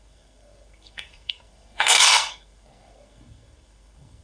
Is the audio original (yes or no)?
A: no